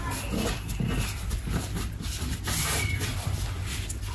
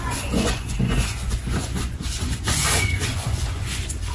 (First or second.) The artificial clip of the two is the second